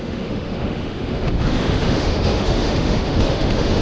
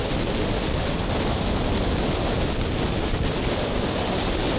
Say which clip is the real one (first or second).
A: second